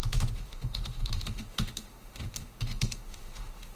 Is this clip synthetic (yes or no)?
yes